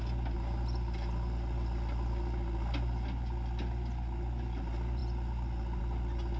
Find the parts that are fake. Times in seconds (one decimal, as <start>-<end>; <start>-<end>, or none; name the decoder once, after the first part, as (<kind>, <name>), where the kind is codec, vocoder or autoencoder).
none